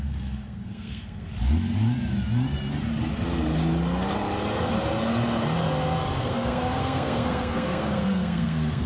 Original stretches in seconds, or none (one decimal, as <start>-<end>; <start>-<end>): 1.3-6.2